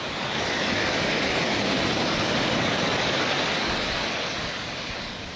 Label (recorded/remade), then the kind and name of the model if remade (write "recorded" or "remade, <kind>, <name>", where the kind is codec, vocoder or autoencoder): remade, codec, DAC